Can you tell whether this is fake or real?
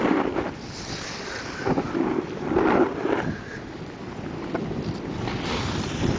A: real